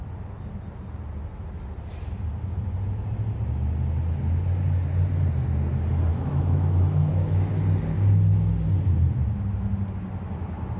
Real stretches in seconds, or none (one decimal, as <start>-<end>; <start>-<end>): 0.0-6.1; 7.5-10.8